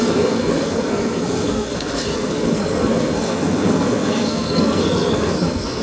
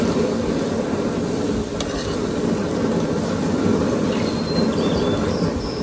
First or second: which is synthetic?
first